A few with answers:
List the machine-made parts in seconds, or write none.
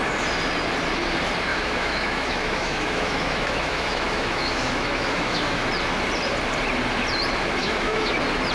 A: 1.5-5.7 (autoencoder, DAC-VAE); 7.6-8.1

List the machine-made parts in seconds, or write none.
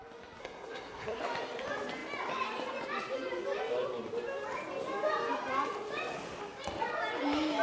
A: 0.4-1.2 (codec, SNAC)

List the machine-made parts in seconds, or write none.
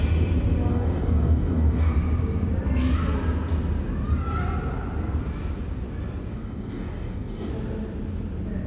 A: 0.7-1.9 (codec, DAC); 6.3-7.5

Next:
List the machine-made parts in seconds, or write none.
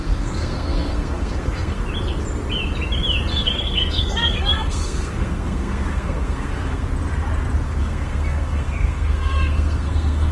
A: 0.0-1.8 (codec, SNAC); 3.3-6.9; 7.8-10.3